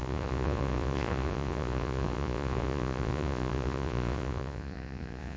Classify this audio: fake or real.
fake